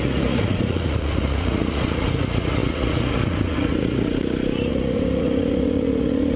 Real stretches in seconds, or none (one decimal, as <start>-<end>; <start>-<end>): none